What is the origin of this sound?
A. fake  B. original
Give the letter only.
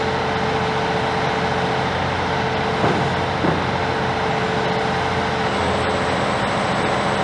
B